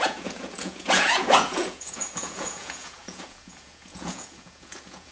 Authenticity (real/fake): fake